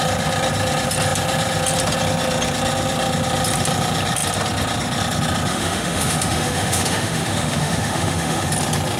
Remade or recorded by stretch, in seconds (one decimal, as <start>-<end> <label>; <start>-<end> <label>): 0.0-5.5 recorded; 5.5-8.5 remade; 8.5-9.0 recorded